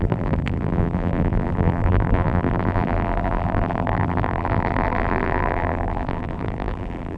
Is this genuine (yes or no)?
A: no